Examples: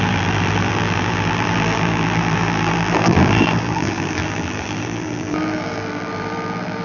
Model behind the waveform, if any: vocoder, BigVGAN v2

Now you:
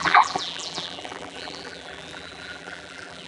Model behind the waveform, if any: vocoder, BigVGAN v2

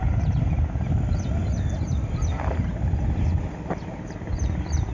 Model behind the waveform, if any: none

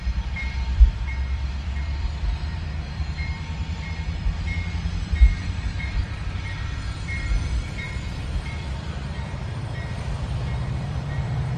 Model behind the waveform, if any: vocoder, BigVGAN v2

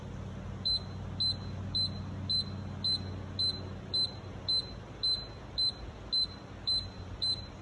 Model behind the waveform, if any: none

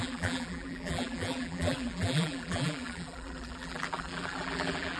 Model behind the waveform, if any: vocoder, BigVGAN v2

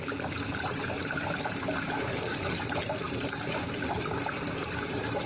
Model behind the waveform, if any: vocoder, BigVGAN v2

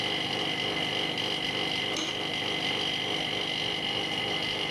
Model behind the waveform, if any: none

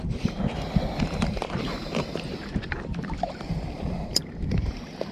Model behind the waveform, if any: vocoder, BigVGAN v2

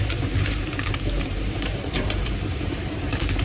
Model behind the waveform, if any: vocoder, BigVGAN v2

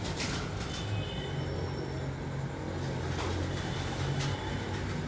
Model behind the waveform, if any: none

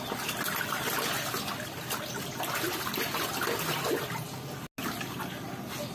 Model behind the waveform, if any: none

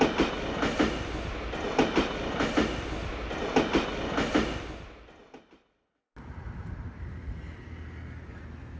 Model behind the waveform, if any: none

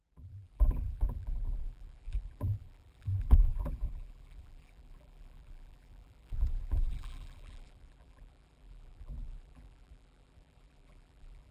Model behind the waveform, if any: vocoder, BigVGAN v2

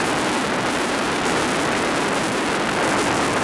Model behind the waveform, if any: vocoder, BigVGAN v2